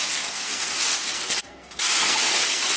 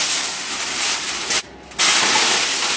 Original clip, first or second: second